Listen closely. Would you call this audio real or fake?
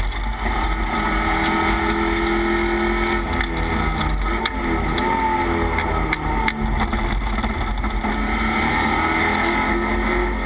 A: real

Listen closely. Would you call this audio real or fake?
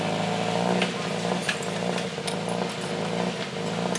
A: real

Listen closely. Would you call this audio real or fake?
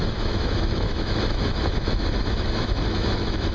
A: fake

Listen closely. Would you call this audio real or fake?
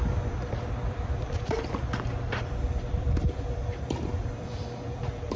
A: fake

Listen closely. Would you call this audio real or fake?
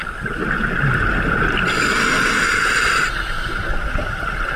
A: real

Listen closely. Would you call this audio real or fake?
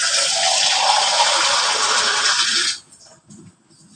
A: real